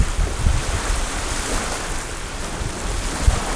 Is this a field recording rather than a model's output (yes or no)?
yes